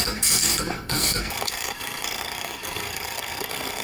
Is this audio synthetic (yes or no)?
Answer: yes